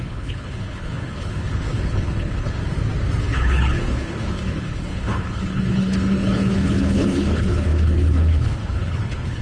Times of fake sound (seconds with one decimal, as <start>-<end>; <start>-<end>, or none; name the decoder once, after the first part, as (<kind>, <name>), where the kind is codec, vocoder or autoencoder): 0.0-2.6 (codec, HILCodec); 3.2-9.4